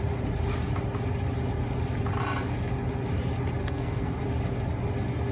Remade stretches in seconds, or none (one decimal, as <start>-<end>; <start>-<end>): 3.6-4.2